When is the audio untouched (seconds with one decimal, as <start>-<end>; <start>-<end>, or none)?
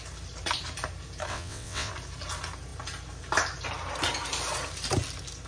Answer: 0.0-1.3; 1.9-5.5